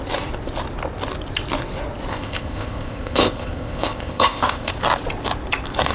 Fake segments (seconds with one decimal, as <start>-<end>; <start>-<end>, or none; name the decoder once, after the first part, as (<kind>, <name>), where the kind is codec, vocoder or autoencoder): 2.1-4.7 (codec, ZipCodec)

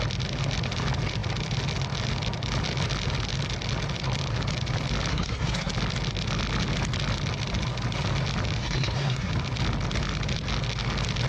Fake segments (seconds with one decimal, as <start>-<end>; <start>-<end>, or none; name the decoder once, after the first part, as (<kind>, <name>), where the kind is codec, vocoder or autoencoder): 5.1-5.7 (codec, SNAC); 8.6-9.3